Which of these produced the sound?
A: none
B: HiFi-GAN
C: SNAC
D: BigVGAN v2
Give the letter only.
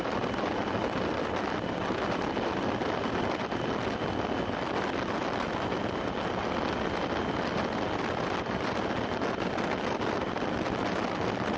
A